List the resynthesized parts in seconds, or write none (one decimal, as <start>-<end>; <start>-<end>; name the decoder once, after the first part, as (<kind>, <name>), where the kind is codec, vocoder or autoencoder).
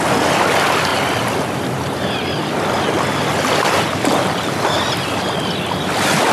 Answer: none